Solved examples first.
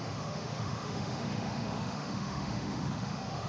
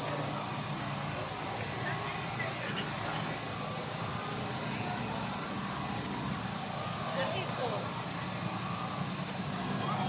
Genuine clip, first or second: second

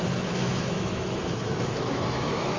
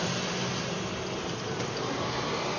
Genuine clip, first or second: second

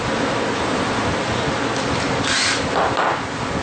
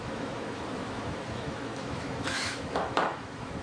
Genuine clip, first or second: first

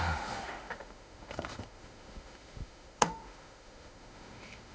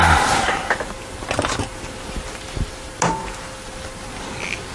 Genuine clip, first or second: second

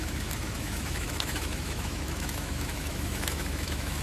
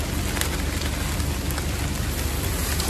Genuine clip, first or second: second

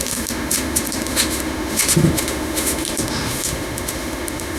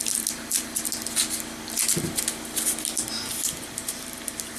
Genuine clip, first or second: second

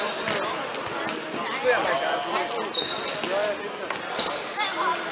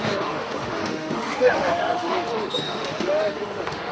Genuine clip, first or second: first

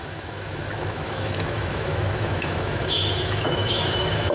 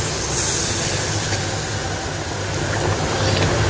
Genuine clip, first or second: second